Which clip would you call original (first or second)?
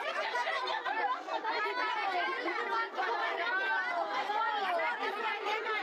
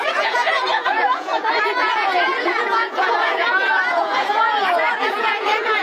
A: first